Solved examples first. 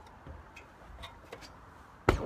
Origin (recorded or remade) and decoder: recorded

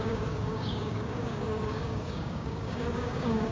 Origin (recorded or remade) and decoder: remade, codec, DAC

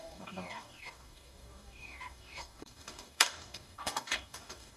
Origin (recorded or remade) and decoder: remade, codec, DAC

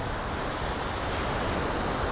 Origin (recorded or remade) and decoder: recorded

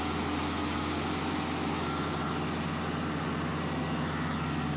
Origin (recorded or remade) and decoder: recorded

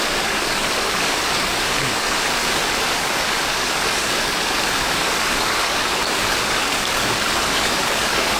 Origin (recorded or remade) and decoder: remade, codec, DAC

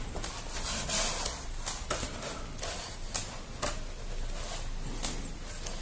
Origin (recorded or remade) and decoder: recorded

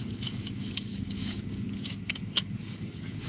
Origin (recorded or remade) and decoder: remade, codec, DAC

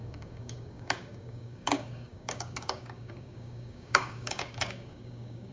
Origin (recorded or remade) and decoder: remade, codec, DAC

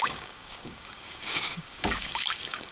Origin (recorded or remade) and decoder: remade, codec, DAC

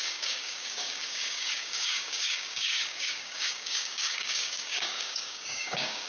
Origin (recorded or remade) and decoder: remade, codec, DAC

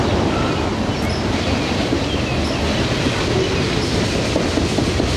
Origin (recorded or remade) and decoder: recorded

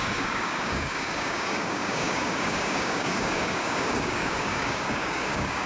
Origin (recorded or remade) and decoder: remade, codec, DAC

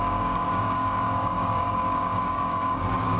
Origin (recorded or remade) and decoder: remade, codec, DAC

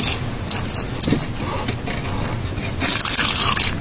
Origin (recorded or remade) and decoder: recorded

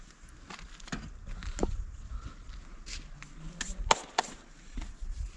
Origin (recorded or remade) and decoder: recorded